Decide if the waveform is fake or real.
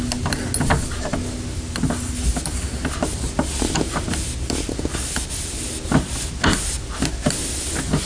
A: real